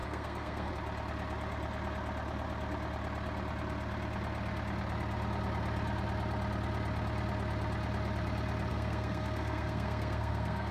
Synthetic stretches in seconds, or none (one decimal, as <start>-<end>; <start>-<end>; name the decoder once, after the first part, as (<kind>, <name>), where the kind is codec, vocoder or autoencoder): 0.0-0.7 (codec, SNAC); 8.7-10.7